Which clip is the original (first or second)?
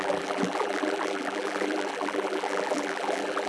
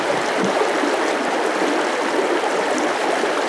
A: second